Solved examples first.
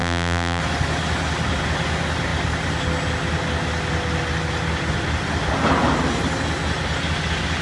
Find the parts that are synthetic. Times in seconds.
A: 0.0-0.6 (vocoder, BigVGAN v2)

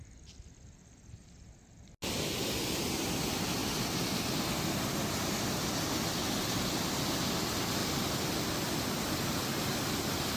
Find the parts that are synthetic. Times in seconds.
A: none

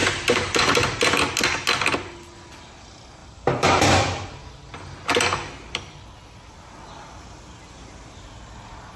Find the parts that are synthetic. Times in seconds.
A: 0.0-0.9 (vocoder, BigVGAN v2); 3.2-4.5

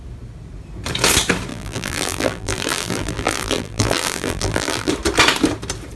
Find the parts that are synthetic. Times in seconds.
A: 1.5-4.9 (vocoder, BigVGAN v2)